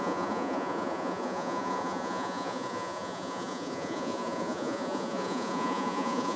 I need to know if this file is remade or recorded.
remade